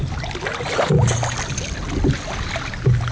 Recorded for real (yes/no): yes